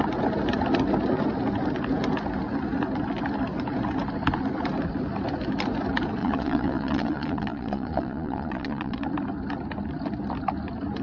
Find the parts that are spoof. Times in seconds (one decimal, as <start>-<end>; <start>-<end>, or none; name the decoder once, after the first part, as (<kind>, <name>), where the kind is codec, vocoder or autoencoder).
6.2-9.1 (vocoder, Vocos)